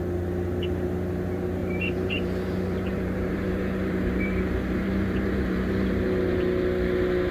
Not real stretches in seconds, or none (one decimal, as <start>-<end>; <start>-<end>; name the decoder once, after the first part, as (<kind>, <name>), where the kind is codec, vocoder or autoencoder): 1.6-6.0 (vocoder, BigVGAN v2)